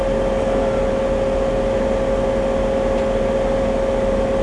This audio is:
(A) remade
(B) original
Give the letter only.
B